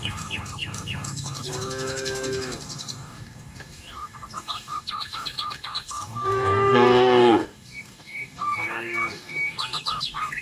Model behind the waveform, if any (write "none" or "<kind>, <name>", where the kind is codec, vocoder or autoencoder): codec, DAC